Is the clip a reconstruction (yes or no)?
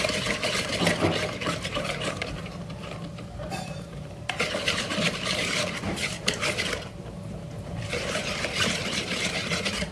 yes